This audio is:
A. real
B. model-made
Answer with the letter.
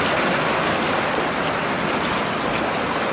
A